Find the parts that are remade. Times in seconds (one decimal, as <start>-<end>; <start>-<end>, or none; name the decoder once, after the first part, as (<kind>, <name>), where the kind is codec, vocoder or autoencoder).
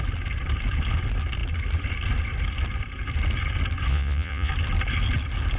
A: 3.9-4.5 (vocoder, Vocos)